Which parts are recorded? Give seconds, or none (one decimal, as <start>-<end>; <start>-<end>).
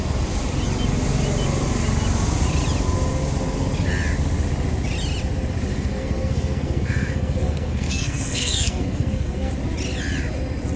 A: 0.0-5.7; 9.5-10.8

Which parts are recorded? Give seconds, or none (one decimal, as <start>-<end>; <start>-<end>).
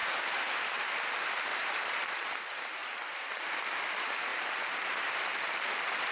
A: 0.8-1.5; 2.1-6.1